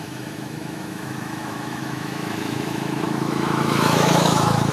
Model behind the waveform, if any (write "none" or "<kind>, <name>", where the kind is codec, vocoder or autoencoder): autoencoder, DAC-VAE